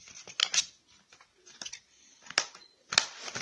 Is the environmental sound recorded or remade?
recorded